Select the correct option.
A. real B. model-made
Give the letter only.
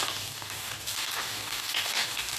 B